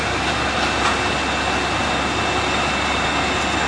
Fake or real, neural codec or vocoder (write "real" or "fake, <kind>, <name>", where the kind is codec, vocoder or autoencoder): real